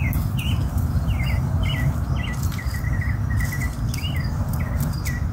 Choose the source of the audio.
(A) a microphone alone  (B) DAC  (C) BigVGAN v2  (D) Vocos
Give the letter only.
A